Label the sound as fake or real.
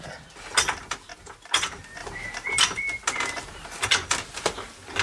real